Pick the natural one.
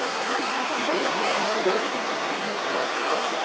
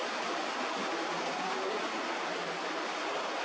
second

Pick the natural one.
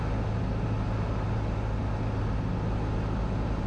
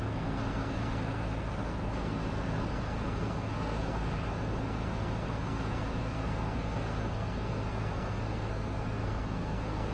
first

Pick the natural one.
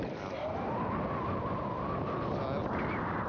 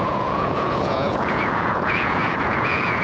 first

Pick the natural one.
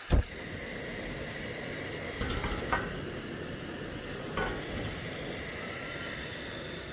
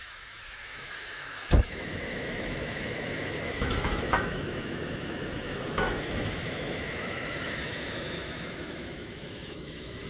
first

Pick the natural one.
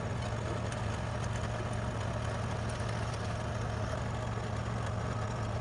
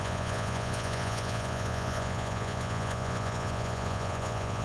first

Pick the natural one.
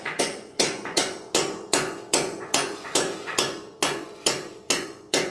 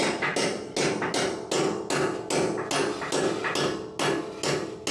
second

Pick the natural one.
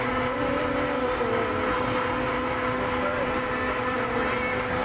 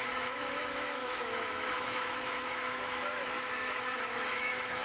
first